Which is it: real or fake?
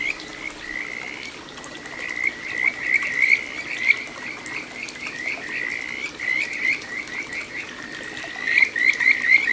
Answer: real